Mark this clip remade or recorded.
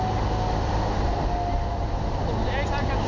recorded